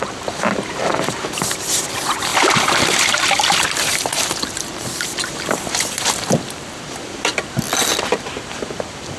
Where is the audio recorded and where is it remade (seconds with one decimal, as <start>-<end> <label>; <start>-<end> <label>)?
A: 0.0-2.3 recorded; 2.3-7.5 remade; 7.5-9.2 recorded